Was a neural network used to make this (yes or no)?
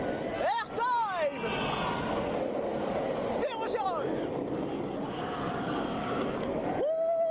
no